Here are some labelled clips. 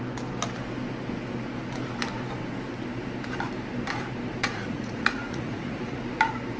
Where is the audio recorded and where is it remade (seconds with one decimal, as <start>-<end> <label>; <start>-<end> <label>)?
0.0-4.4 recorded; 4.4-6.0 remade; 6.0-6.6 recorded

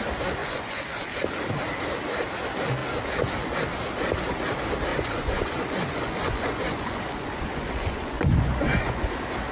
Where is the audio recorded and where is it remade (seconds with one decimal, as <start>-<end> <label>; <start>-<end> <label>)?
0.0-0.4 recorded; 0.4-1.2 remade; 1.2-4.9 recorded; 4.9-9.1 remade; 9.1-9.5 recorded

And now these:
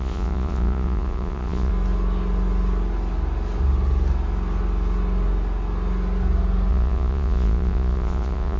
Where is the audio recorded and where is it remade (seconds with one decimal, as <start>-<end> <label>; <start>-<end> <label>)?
0.0-1.7 remade; 1.7-6.7 recorded; 6.7-8.6 remade

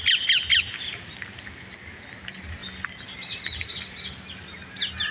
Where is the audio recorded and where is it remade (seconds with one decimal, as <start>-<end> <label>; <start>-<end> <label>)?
0.0-5.1 recorded

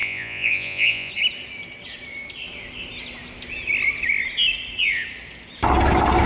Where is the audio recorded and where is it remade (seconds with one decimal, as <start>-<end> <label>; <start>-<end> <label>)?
0.0-1.1 remade; 1.1-6.3 recorded

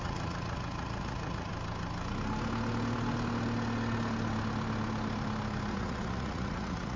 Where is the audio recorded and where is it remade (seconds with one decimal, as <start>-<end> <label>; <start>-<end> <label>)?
0.0-1.5 remade; 1.5-5.7 recorded; 5.7-7.0 remade

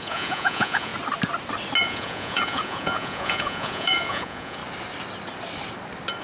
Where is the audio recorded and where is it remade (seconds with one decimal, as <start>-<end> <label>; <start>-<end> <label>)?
0.0-0.9 remade; 0.9-1.8 recorded; 1.8-4.6 remade; 4.6-6.2 recorded

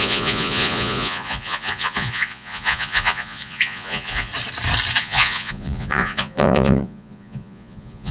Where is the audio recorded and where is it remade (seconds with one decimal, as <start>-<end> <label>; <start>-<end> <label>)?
0.0-4.3 remade; 4.3-5.0 recorded; 5.0-8.1 remade